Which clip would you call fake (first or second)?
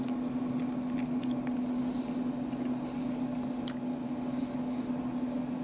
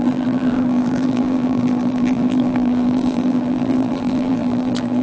second